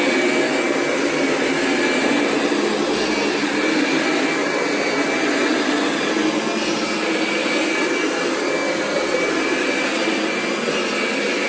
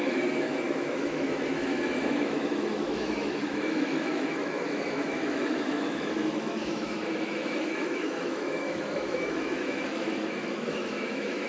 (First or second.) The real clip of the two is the first